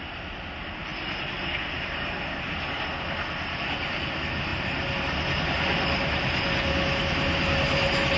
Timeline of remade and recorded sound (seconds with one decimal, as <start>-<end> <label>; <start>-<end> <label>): 0.0-8.2 recorded